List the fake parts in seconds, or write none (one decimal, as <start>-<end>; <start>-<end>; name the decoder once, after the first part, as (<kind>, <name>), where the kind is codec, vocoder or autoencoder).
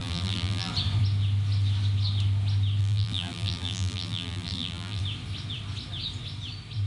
0.0-0.7 (vocoder, BigVGAN v2); 2.8-5.0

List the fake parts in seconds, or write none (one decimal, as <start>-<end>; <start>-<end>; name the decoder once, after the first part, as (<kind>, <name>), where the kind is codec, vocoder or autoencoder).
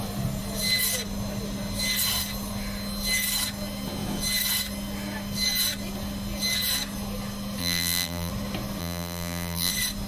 7.6-8.3 (vocoder, BigVGAN v2); 8.8-9.7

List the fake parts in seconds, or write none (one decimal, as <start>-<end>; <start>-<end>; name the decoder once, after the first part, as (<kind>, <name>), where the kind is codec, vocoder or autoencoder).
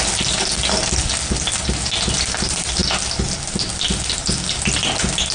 none